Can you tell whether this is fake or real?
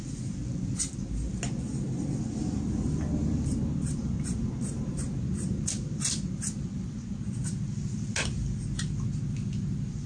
real